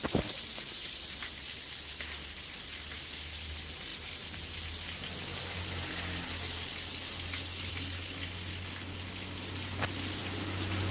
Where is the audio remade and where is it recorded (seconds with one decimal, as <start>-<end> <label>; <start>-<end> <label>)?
0.0-10.9 recorded